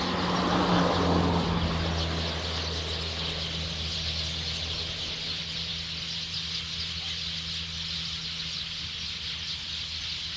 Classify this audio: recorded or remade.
recorded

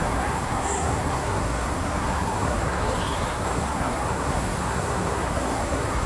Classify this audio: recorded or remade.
remade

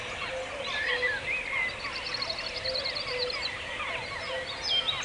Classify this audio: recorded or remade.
recorded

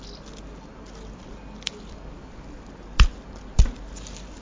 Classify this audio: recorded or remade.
recorded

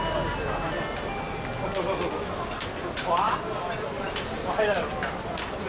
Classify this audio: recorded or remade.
recorded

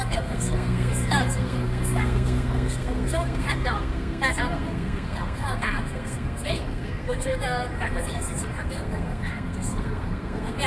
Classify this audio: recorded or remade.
remade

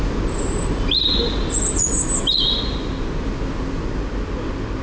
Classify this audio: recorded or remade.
recorded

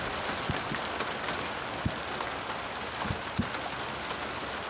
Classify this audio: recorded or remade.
recorded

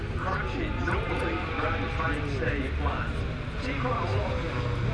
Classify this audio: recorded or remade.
recorded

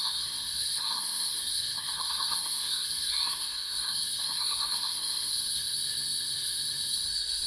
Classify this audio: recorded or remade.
remade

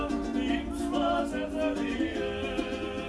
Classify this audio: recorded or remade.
recorded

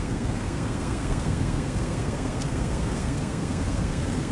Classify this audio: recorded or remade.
remade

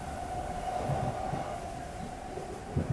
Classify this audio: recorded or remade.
recorded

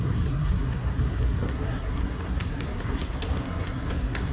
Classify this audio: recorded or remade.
remade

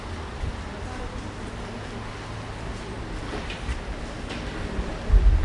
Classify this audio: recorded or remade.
recorded